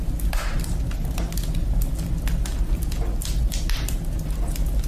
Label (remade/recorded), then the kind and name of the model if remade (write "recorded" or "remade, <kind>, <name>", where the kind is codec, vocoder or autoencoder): recorded